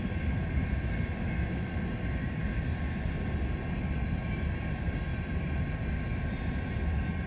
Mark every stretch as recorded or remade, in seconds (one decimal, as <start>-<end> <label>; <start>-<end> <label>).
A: 0.0-5.1 recorded; 5.1-5.7 remade; 5.7-7.3 recorded